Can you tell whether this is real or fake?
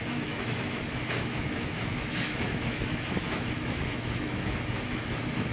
fake